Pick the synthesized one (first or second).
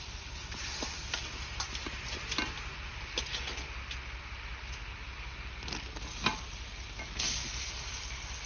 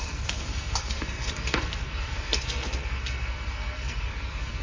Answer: second